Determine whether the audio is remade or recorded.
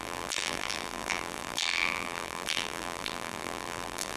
remade